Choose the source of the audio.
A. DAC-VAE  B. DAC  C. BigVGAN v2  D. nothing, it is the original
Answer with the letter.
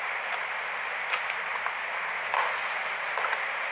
D